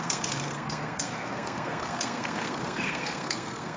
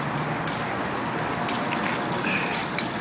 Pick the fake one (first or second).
first